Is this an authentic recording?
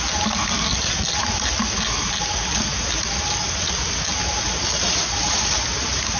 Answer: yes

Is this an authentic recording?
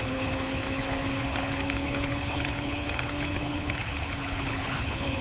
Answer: no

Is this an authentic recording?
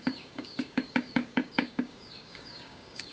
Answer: no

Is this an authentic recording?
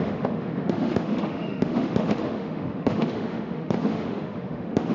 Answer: no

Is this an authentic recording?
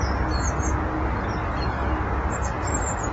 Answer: yes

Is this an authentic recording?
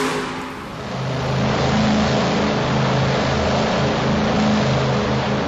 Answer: yes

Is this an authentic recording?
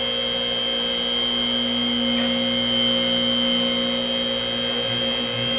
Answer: yes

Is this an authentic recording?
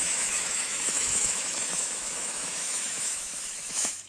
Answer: no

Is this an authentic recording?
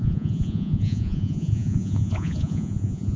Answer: no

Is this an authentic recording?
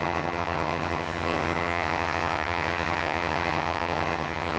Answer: no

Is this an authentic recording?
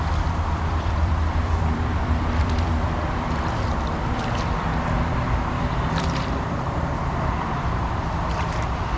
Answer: no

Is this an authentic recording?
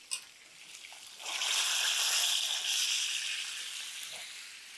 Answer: yes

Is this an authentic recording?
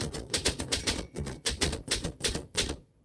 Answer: no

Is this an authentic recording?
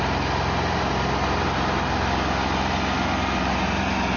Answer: yes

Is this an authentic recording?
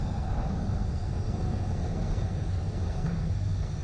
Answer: no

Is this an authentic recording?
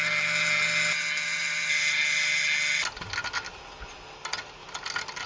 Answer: yes